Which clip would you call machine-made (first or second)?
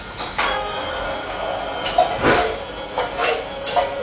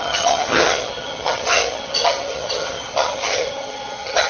second